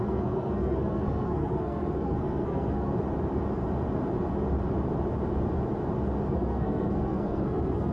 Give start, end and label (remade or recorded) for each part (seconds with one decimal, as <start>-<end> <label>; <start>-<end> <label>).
0.0-2.9 remade; 2.9-6.3 recorded; 6.3-7.9 remade